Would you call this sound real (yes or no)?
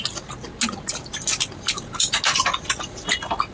yes